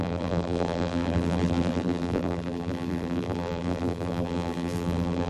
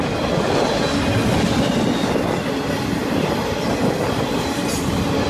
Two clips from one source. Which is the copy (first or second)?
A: first